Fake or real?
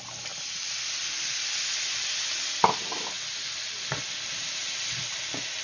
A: real